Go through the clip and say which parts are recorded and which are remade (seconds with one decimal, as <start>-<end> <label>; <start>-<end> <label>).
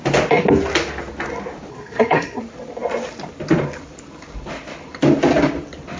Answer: 0.0-1.7 recorded; 1.7-2.4 remade; 2.4-6.0 recorded